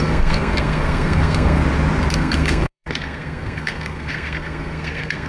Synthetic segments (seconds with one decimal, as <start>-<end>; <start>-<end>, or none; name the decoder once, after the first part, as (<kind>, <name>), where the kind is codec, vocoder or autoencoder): 0.0-1.6 (codec, SNAC); 2.1-5.3